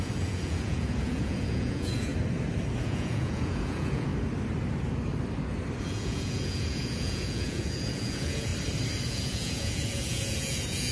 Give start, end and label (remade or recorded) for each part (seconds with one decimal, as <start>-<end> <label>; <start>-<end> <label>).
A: 0.0-2.1 remade; 2.1-2.8 recorded; 2.8-4.1 remade; 4.1-5.8 recorded; 5.8-8.5 remade; 8.5-9.1 recorded; 9.1-10.9 remade